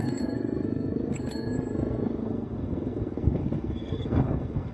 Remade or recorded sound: remade